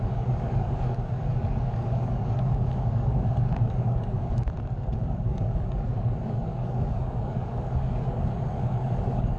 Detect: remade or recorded remade